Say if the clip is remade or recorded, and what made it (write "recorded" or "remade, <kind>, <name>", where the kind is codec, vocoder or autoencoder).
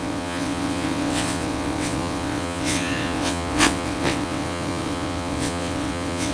remade, vocoder, WaveNeXt